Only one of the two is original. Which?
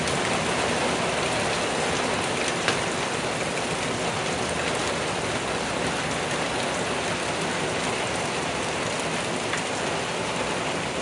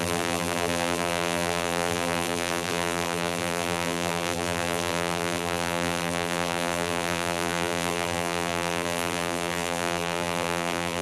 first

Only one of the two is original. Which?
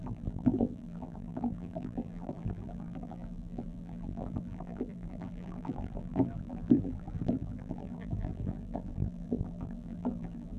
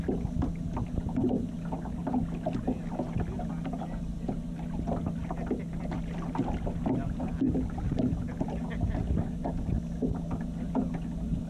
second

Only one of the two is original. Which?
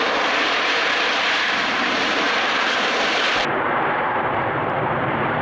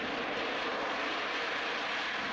second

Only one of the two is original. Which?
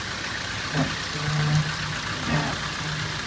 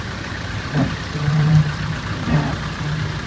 first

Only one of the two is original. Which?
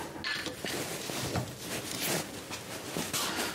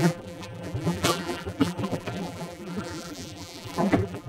first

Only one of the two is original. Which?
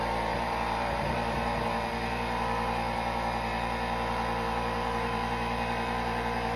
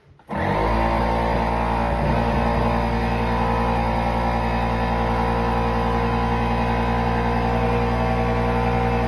second